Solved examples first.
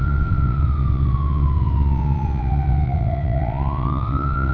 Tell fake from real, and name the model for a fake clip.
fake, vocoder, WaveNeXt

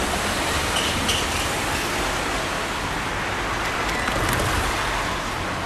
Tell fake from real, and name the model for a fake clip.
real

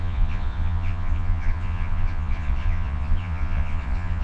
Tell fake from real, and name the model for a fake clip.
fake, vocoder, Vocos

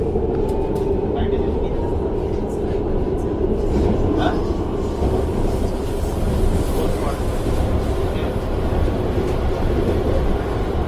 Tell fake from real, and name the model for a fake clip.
real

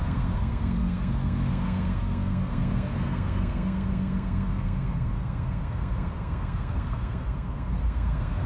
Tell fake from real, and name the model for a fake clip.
fake, codec, SNAC